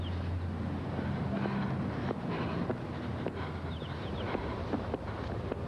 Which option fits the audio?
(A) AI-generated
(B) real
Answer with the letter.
B